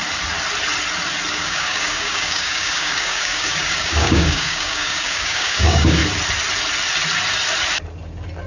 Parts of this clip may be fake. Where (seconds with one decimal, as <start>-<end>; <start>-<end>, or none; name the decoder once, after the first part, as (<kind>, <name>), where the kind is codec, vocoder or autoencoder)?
1.3-6.0 (codec, DAC)